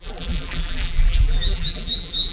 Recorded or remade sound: remade